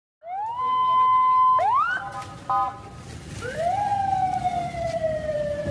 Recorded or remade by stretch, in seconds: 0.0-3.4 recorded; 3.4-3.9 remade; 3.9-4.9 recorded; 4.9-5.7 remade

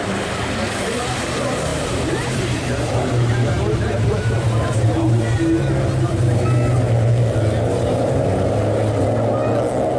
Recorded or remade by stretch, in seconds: 0.0-1.7 recorded; 1.7-5.7 remade; 5.7-10.0 recorded

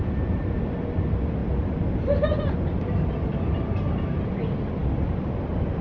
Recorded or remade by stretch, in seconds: 0.0-1.4 remade; 1.4-2.4 recorded; 2.4-5.8 remade